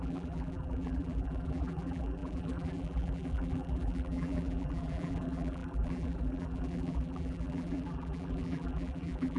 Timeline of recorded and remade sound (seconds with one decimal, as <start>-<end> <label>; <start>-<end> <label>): 0.0-9.4 remade